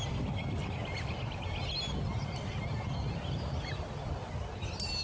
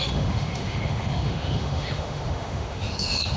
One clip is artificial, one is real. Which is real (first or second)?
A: first